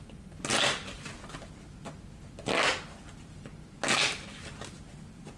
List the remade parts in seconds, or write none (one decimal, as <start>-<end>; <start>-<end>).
none